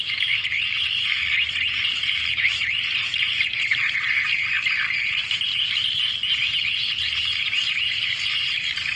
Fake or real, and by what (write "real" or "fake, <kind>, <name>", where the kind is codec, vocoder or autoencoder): fake, vocoder, BigVGAN v2